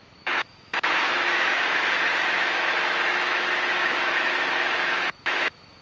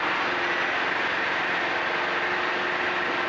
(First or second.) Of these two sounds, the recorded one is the second